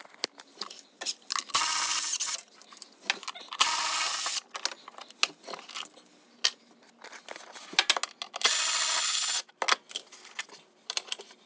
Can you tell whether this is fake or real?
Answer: real